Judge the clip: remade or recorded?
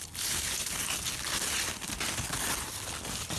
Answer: recorded